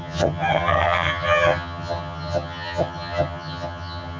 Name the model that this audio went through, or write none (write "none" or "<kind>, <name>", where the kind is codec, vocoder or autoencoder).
vocoder, HiFi-GAN